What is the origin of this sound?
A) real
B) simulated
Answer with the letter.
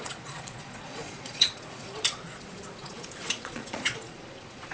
B